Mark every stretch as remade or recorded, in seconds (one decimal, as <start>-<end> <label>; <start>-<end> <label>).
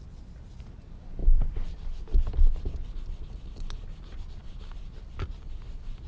0.0-6.1 recorded